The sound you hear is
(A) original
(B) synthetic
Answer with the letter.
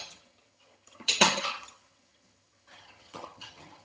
B